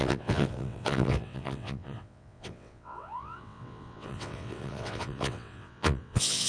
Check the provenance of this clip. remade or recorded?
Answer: remade